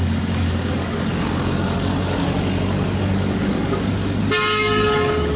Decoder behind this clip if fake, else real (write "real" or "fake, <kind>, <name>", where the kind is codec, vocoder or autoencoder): fake, codec, DAC